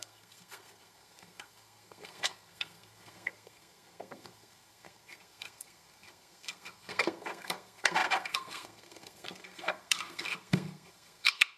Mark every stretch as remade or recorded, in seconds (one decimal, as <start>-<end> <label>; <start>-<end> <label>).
0.0-11.6 remade